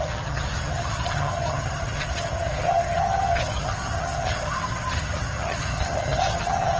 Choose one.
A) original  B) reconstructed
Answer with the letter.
B